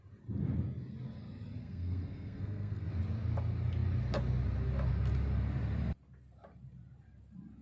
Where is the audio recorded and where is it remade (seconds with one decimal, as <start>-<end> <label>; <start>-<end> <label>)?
0.0-1.6 recorded; 1.6-2.9 remade; 2.9-7.6 recorded